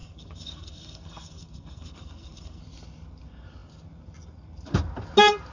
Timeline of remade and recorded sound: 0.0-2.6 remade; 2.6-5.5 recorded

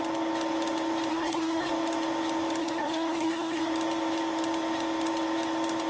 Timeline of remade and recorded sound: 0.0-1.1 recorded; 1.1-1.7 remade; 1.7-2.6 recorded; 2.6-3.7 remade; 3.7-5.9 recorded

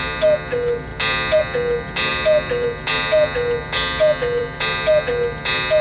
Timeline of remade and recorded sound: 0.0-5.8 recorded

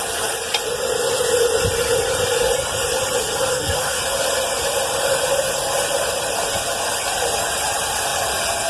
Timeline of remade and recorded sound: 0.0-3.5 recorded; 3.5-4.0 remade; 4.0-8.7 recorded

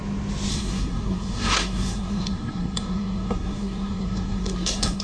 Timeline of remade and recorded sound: 0.0-0.5 recorded; 0.5-5.0 remade

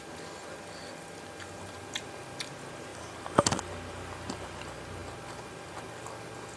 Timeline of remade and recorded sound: 0.0-6.6 recorded

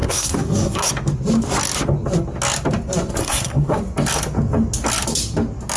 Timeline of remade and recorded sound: 0.0-0.9 remade; 0.9-3.2 recorded; 3.2-3.8 remade; 3.8-5.8 recorded

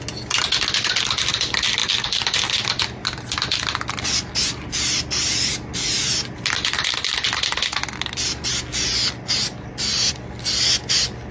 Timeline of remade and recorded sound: 0.0-11.3 recorded